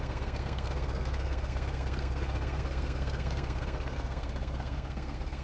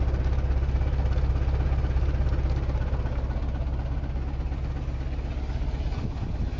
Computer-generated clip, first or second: first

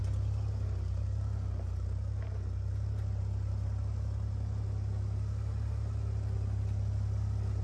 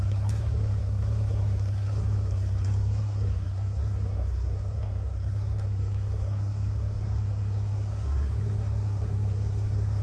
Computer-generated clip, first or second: second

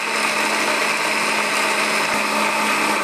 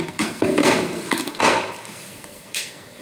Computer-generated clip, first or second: second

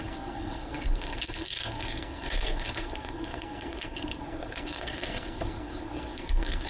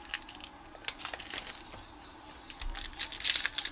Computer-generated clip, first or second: first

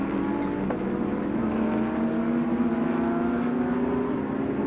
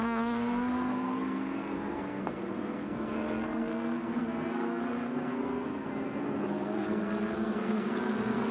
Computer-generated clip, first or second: second